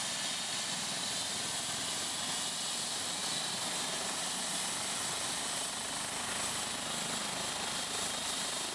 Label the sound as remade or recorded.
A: recorded